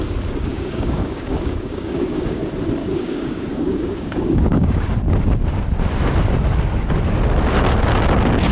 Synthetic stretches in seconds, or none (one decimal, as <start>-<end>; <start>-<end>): 0.5-2.4; 2.8-4.9